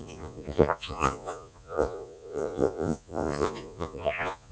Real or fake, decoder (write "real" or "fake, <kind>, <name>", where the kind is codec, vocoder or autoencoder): fake, vocoder, Vocos